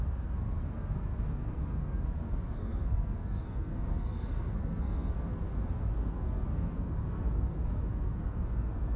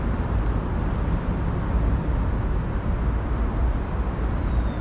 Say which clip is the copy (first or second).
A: first